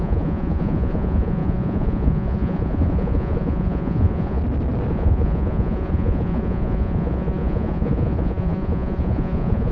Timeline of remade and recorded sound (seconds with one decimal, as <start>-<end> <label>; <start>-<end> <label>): 0.0-4.4 remade; 4.4-4.9 recorded; 4.9-9.7 remade